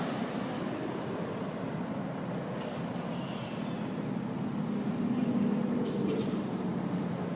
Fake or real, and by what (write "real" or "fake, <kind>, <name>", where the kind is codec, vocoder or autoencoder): real